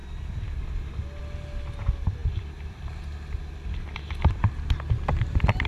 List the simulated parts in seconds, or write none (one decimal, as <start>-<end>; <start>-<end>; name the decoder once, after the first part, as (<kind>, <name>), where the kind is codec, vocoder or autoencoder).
none